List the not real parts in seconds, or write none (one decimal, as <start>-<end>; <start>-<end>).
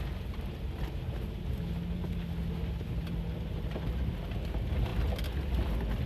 none